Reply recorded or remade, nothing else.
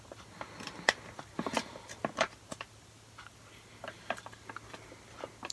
recorded